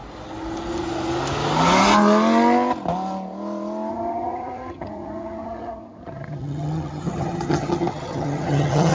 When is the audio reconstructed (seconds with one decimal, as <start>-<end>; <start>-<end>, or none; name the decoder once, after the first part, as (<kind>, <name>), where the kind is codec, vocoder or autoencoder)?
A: 3.9-8.9 (vocoder, HiFi-GAN)